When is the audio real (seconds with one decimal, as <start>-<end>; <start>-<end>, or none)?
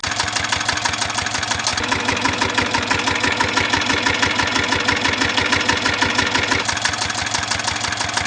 0.0-8.3